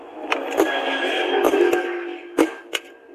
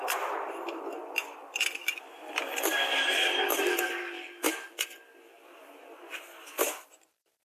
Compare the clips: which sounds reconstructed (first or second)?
second